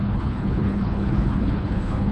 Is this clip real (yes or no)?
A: no